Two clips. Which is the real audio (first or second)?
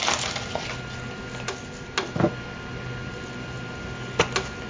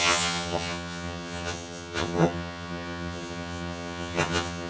first